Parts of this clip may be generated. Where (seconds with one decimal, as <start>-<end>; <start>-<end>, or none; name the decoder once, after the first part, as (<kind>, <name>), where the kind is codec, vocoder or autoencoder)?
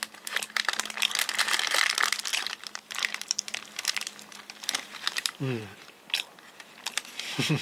2.3-5.6 (vocoder, BigVGAN v2)